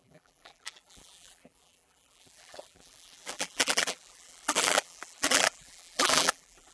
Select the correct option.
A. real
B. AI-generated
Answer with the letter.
B